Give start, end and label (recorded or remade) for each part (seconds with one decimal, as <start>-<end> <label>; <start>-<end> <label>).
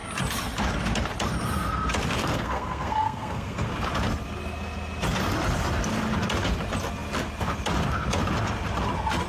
0.0-2.2 recorded; 2.2-3.7 remade; 3.7-9.3 recorded